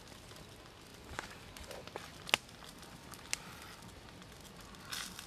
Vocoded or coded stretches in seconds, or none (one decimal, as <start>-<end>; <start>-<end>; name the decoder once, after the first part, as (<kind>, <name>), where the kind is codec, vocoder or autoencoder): none